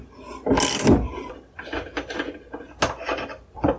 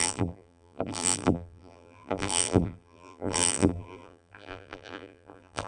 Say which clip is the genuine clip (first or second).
first